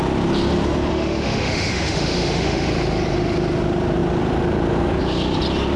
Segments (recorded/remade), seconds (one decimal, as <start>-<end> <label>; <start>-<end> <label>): 0.0-0.9 recorded; 0.9-2.7 remade; 2.7-5.8 recorded